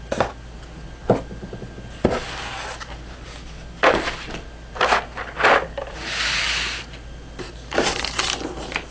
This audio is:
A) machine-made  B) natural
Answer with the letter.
B